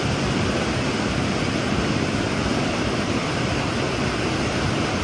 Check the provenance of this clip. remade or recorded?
recorded